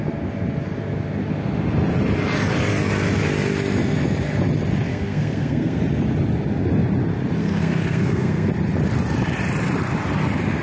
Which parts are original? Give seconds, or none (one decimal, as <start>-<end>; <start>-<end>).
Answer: 0.0-4.9; 5.8-7.4; 8.5-10.6